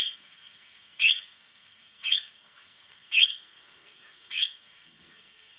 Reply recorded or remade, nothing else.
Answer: remade